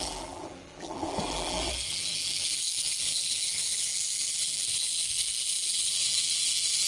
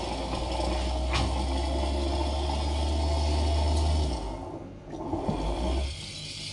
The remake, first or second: first